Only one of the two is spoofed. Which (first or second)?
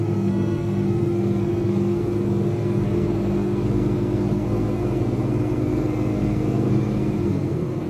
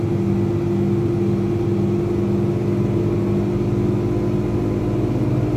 first